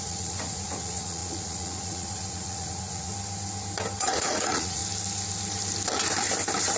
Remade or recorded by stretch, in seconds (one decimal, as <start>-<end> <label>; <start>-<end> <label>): 0.0-3.1 remade; 3.1-4.0 recorded; 4.0-4.8 remade; 4.8-6.8 recorded